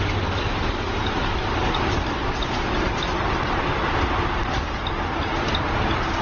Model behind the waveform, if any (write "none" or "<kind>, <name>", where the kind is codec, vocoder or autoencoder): none